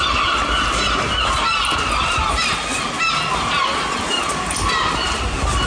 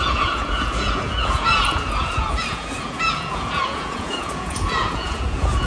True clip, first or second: first